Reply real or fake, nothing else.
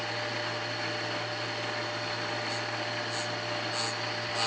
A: real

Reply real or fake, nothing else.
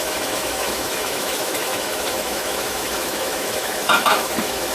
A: fake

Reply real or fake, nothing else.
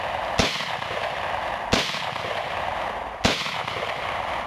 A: real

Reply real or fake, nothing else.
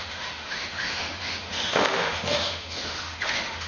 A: fake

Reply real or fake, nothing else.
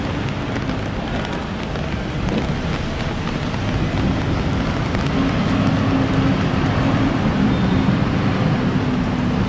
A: real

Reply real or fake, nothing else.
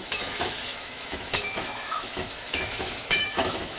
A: fake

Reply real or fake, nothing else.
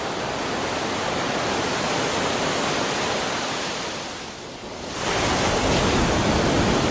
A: real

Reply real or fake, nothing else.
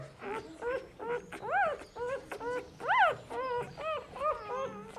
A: real